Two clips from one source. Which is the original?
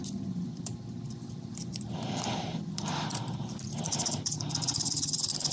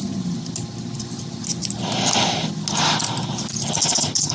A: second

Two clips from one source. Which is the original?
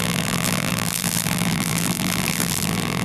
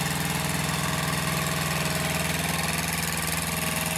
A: second